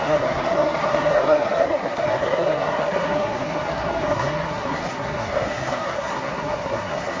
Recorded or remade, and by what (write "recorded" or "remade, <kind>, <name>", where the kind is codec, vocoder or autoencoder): remade, codec, SNAC